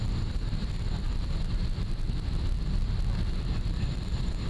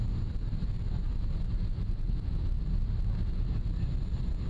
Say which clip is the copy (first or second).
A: first